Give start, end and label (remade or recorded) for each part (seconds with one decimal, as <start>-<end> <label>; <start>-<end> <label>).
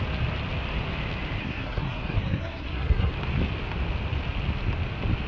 0.0-1.4 recorded; 1.4-3.1 remade; 3.1-5.3 recorded